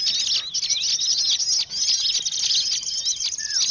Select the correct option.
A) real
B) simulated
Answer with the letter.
A